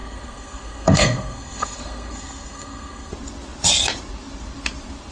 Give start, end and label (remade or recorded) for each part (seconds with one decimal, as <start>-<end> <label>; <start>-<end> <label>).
0.0-3.1 remade; 3.1-5.1 recorded